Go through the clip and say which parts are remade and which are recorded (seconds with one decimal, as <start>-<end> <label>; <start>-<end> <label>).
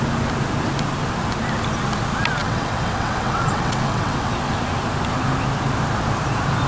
0.0-2.4 recorded; 2.4-4.3 remade; 4.3-6.7 recorded